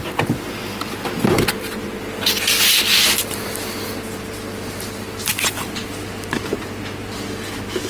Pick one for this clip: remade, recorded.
recorded